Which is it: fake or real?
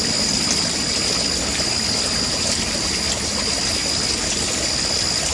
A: real